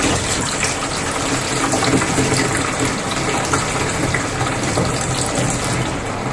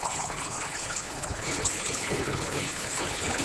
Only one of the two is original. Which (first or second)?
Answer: first